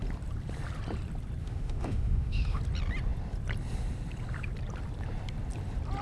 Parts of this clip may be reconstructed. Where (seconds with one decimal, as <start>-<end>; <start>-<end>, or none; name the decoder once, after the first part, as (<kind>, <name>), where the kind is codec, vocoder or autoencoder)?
1.4-2.6 (autoencoder, DAC-VAE)